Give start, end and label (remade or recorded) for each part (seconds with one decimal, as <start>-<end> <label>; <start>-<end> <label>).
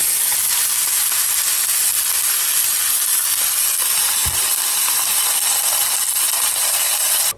0.0-7.4 recorded